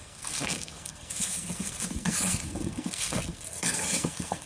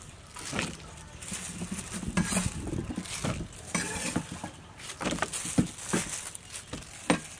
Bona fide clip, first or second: second